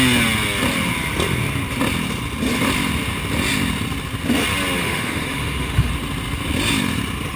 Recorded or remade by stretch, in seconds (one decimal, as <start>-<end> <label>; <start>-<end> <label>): 0.0-4.8 recorded; 4.8-5.9 remade; 5.9-7.4 recorded